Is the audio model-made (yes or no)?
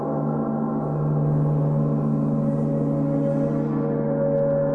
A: no